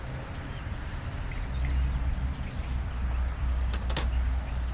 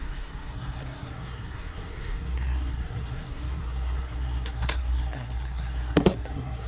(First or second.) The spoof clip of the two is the second